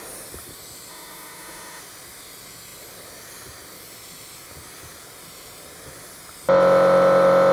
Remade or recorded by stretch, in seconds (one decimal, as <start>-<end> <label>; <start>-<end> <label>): 0.0-0.9 recorded; 0.9-1.8 remade; 1.8-7.5 recorded